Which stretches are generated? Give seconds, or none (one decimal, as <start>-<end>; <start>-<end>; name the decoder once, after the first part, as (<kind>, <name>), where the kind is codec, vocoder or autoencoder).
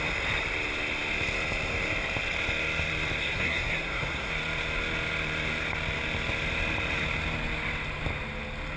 3.2-4.3 (codec, SNAC)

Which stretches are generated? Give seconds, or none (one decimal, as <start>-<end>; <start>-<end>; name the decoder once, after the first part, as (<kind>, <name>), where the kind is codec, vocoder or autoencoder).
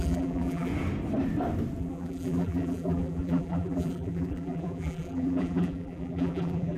0.0-0.7 (vocoder, BigVGAN v2); 1.8-6.8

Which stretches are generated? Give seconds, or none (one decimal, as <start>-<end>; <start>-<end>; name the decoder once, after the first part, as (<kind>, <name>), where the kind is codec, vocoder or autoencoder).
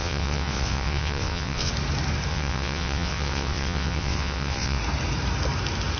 0.0-1.7 (vocoder, WaveNeXt); 2.3-4.8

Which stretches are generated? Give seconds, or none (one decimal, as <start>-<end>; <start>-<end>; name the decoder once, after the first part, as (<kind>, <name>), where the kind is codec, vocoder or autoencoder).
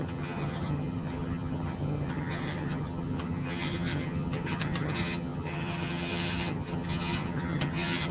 0.0-8.1 (vocoder, HiFi-GAN)